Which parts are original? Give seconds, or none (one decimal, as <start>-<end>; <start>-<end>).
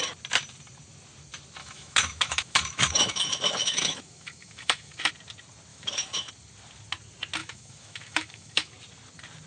0.0-1.6; 5.1-5.7; 6.3-7.4; 8.7-9.5